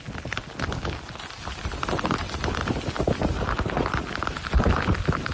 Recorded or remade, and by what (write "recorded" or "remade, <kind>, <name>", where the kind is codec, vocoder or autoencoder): remade, vocoder, BigVGAN v2